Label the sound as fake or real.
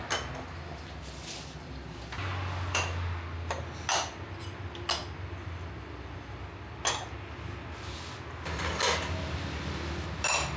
real